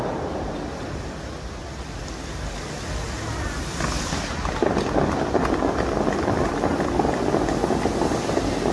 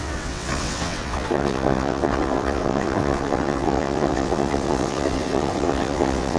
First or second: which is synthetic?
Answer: second